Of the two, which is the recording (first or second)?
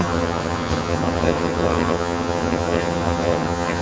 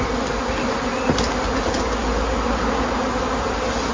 second